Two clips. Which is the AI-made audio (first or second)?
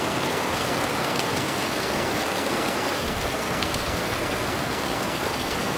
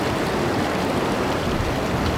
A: first